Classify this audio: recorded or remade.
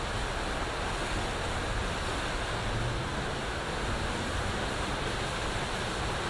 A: recorded